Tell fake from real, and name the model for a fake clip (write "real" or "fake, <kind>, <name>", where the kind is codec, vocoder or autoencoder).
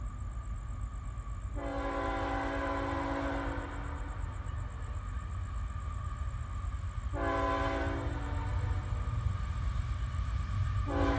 real